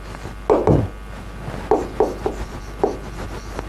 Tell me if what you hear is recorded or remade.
recorded